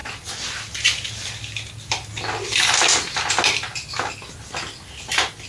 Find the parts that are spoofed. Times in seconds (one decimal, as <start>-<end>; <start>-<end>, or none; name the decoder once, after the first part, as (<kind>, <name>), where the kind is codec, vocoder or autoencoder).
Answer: none